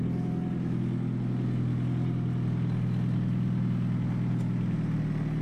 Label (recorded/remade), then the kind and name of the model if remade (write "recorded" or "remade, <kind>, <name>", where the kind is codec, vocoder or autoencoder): recorded